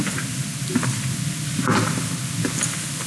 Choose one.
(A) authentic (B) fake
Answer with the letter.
A